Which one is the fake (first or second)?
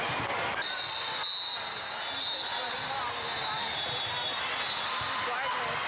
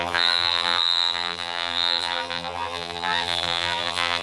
second